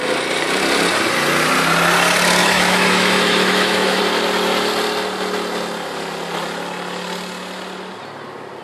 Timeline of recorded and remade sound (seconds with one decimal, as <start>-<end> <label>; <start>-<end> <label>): 0.0-2.4 recorded; 2.4-4.0 remade; 4.0-8.6 recorded